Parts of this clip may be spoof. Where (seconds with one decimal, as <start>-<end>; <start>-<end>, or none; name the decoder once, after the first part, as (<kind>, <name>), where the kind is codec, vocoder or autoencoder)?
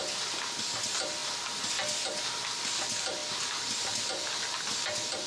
none